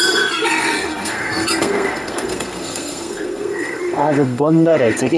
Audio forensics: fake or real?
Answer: fake